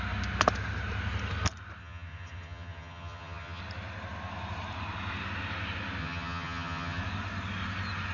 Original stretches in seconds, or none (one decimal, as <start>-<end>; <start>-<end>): 0.0-1.8; 3.6-6.0; 7.0-8.1